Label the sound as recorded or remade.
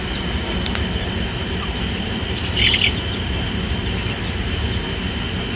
recorded